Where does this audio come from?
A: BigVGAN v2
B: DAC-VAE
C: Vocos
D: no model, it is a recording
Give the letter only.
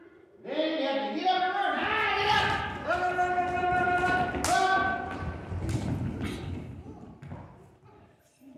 D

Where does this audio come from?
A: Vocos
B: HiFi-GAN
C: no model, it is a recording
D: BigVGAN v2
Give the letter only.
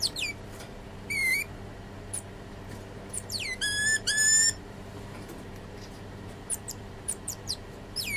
D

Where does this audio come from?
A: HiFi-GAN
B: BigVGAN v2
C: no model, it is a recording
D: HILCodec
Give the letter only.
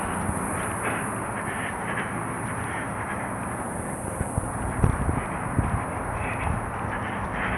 C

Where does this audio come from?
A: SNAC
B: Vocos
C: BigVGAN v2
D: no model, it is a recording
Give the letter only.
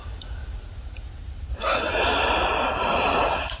D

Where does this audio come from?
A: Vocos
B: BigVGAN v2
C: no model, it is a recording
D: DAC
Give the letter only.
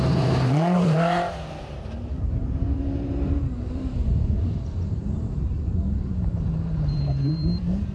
B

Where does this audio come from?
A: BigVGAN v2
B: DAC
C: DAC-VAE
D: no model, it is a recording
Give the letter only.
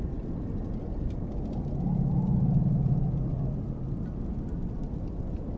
D